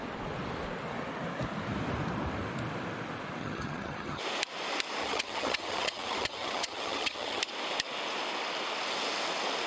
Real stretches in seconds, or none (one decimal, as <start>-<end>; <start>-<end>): 0.0-3.4; 4.2-5.0; 7.4-9.7